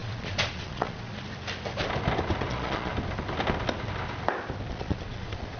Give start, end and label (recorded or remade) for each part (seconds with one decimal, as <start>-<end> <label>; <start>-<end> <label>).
0.0-1.1 remade; 1.1-2.5 recorded; 2.5-2.9 remade; 2.9-4.7 recorded; 4.7-5.6 remade